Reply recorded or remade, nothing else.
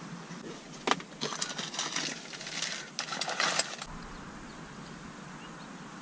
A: recorded